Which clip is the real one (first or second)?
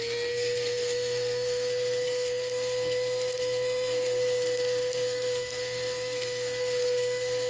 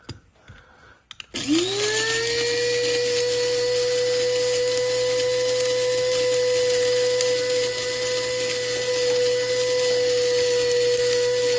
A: second